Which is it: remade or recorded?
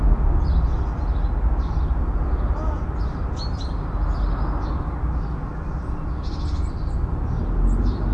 recorded